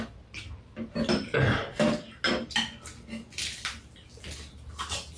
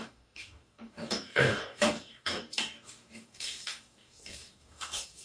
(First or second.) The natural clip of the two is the first